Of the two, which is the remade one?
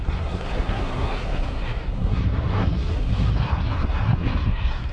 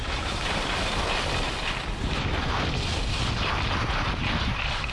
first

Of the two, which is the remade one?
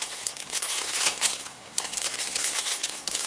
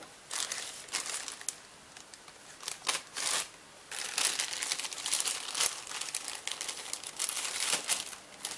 first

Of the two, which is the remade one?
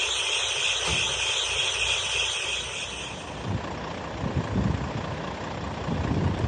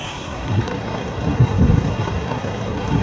second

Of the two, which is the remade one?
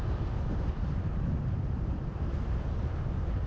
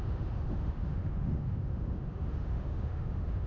second